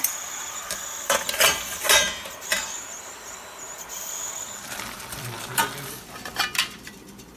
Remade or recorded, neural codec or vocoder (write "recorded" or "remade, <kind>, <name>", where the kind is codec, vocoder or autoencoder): remade, vocoder, BigVGAN v2